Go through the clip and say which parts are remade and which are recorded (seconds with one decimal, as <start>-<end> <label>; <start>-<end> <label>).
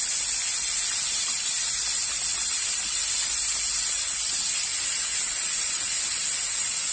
0.0-6.9 recorded